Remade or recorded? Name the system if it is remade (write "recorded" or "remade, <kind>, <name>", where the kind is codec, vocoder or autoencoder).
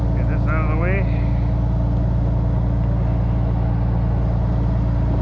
recorded